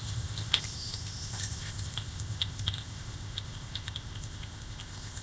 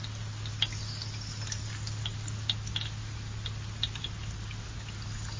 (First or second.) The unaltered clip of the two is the second